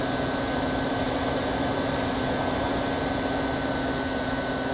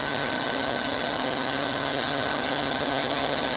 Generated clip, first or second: second